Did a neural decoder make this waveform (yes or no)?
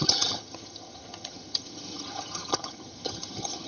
yes